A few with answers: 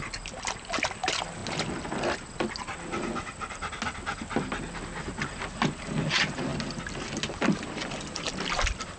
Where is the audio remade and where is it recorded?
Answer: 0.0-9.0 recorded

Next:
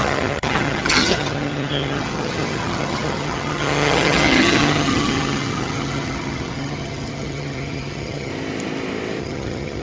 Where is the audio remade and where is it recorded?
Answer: 0.0-8.3 remade; 8.3-9.2 recorded; 9.2-9.8 remade

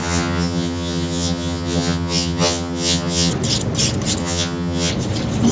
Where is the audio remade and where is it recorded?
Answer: 0.0-3.3 remade; 3.3-4.2 recorded; 4.2-4.9 remade; 4.9-5.5 recorded

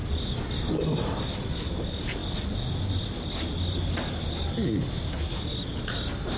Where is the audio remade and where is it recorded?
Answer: 0.0-6.4 recorded

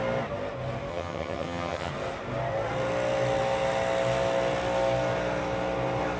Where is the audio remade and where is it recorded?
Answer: 0.0-0.9 recorded; 0.9-1.9 remade; 1.9-6.2 recorded

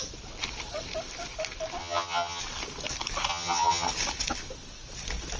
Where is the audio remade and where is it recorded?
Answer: 0.0-1.8 recorded; 1.8-2.4 remade; 2.4-3.3 recorded; 3.3-3.9 remade; 3.9-5.4 recorded

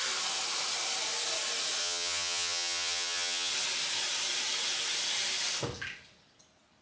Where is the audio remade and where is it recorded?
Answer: 0.0-1.8 recorded; 1.8-3.5 remade; 3.5-6.8 recorded

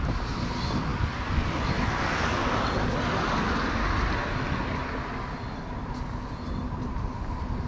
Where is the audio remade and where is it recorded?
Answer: 0.0-7.7 recorded